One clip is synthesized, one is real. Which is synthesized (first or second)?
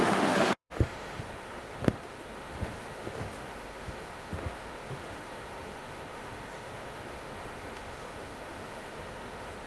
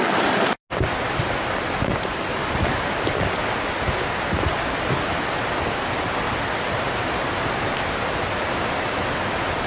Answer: first